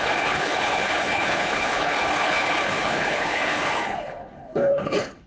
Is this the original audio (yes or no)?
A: no